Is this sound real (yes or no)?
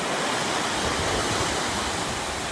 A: yes